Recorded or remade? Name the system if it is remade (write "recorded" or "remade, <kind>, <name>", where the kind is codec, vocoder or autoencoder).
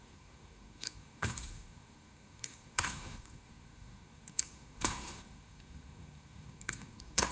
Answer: remade, codec, SNAC